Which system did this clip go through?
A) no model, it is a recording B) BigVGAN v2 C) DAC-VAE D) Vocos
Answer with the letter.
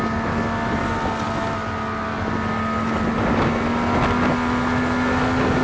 A